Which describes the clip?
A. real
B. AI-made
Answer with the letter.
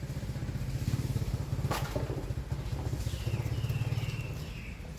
A